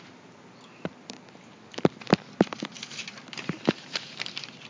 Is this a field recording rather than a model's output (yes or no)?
no